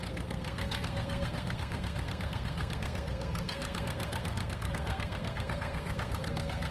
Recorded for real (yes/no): no